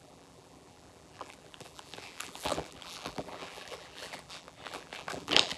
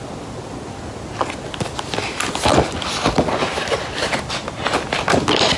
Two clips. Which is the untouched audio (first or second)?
second